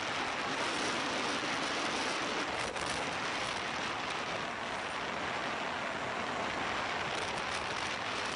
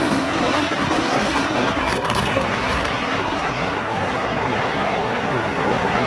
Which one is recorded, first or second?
first